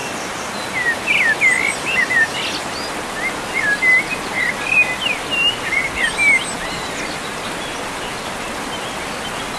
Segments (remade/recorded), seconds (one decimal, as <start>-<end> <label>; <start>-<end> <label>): 0.0-9.6 recorded